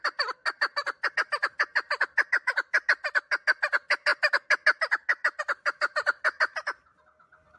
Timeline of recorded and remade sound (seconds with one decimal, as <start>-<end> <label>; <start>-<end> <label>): 0.0-7.6 recorded